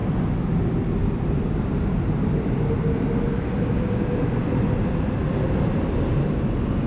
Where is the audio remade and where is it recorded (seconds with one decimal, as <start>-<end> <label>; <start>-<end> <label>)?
0.0-6.9 recorded